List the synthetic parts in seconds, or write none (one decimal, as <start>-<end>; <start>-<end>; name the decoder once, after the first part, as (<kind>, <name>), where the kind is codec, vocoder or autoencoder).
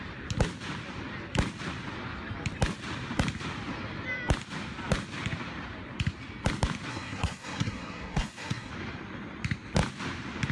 6.9-8.7 (codec, SNAC)